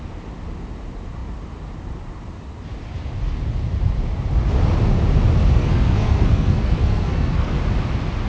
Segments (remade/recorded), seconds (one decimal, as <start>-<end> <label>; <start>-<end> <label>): 0.0-5.5 recorded; 5.5-7.6 remade; 7.6-8.3 recorded